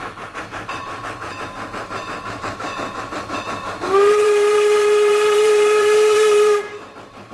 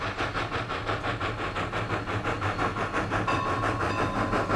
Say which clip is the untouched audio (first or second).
second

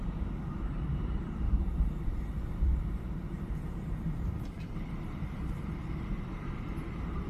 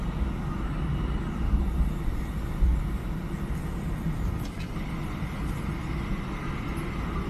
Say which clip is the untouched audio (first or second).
second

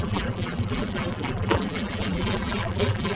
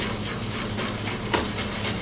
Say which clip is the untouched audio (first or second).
second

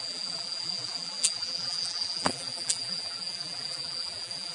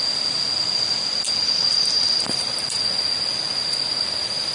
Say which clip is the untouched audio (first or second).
second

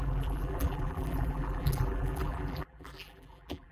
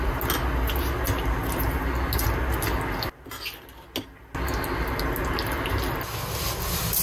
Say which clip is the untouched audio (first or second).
second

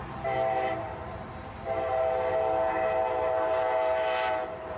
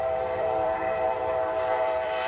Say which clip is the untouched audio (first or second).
first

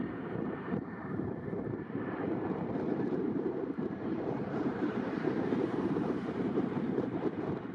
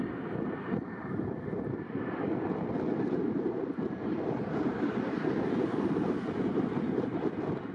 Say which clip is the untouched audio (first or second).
second